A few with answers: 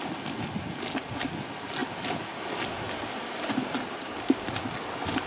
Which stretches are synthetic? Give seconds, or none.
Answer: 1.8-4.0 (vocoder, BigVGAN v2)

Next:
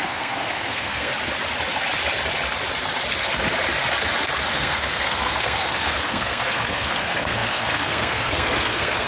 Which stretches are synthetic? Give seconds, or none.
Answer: 0.0-1.1 (codec, SNAC); 4.5-9.1

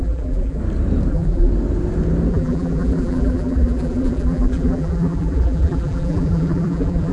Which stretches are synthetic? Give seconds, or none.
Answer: 0.0-0.6 (vocoder, BigVGAN v2); 1.1-1.5; 2.3-7.1

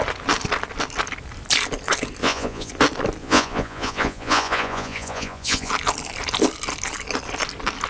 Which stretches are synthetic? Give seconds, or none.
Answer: 2.2-2.7 (vocoder, Vocos); 3.2-5.7

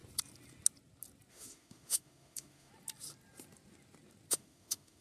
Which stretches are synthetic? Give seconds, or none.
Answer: 1.3-2.7 (autoencoder, DAC-VAE); 4.3-5.0

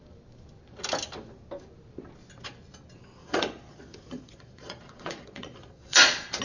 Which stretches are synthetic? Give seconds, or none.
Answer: 3.2-6.4 (vocoder, Vocos)

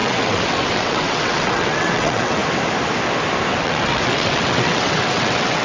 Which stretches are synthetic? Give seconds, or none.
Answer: 0.0-2.4 (vocoder, WaveNeXt); 3.6-5.6